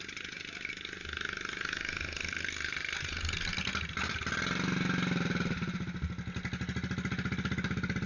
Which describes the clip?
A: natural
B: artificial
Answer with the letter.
A